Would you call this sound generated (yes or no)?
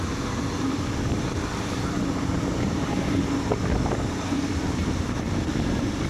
yes